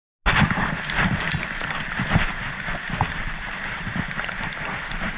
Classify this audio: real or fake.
real